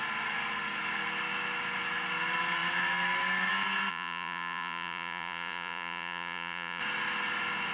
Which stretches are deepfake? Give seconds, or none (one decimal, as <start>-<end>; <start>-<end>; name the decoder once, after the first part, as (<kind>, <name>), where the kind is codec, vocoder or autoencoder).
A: 3.9-6.8 (vocoder, Vocos)